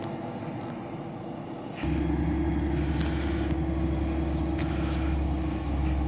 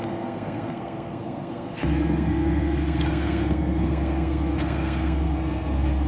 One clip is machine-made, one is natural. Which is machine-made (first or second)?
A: second